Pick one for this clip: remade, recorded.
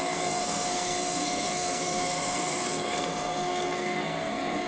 remade